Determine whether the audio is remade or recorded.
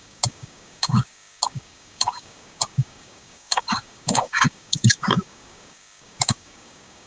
remade